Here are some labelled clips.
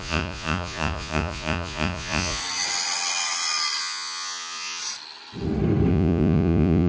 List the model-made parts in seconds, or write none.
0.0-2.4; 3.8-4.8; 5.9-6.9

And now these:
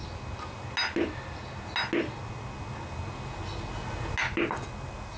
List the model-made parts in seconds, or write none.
none

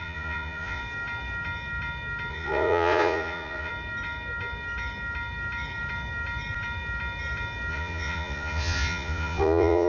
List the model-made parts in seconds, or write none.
0.0-0.8; 2.3-3.7; 7.7-9.9